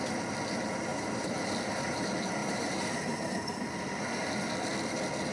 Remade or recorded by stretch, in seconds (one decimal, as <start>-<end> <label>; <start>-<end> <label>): 0.0-0.9 recorded; 0.9-1.5 remade; 1.5-2.4 recorded; 2.4-3.5 remade; 3.5-5.3 recorded